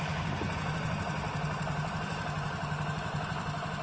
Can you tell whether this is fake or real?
real